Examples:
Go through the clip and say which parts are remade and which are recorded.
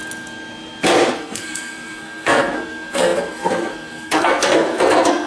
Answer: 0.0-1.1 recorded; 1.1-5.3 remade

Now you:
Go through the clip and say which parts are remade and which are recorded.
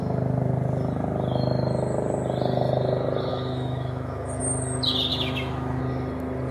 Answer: 0.0-3.3 recorded; 3.3-4.4 remade; 4.4-5.1 recorded; 5.1-5.8 remade; 5.8-6.5 recorded